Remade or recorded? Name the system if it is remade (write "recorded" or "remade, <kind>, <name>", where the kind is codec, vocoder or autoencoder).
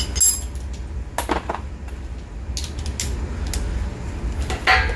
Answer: recorded